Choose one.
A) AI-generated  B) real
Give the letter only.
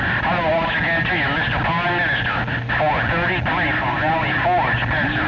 B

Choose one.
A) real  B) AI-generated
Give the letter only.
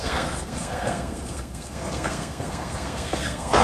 B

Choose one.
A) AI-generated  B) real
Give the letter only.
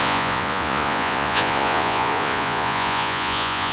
A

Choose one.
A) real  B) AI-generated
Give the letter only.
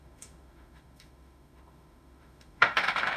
B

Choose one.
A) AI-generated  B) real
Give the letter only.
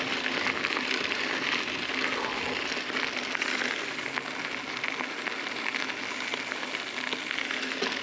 B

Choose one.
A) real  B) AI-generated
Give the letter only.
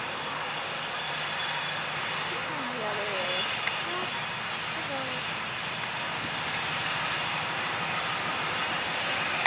A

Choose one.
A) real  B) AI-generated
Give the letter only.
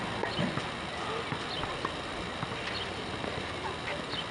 A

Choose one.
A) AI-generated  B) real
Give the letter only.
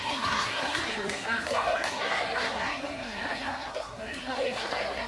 A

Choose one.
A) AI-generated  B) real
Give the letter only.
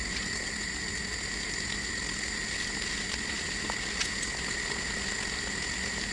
B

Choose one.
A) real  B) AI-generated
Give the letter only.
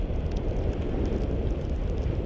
A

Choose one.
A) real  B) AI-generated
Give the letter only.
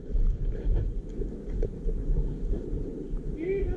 A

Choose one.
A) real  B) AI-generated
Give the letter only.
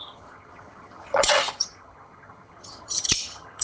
B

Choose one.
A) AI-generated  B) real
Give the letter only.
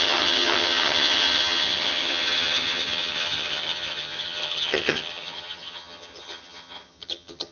A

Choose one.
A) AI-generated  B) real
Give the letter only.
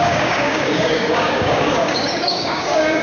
A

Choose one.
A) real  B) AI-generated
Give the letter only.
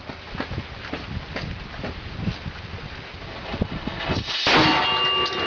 A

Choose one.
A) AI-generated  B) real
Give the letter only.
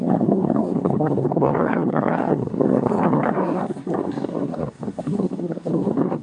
A